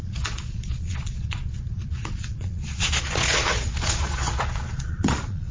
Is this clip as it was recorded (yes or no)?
no